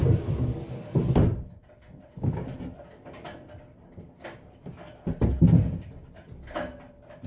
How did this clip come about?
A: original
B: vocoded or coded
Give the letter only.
A